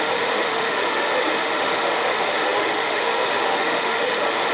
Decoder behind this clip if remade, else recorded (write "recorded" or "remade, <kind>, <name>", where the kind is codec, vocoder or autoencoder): remade, autoencoder, DAC-VAE